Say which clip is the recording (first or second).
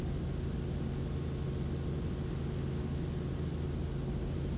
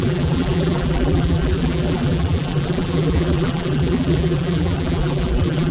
first